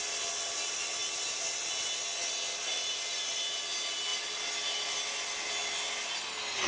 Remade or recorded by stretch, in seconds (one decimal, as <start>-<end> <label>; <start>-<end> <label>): 0.0-6.7 recorded